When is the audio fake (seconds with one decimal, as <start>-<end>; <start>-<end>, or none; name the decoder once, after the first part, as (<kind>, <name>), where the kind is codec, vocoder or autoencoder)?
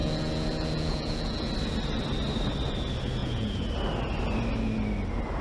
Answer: 0.0-1.5 (vocoder, Vocos); 3.2-3.7